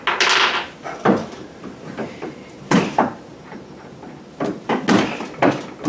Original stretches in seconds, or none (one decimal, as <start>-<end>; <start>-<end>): 0.0-1.2; 4.7-5.9